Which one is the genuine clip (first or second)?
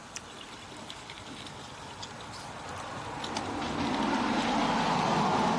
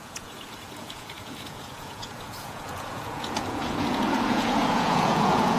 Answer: first